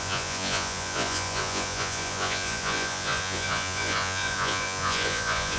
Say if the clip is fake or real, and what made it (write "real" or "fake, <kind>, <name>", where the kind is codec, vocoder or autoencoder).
fake, vocoder, Vocos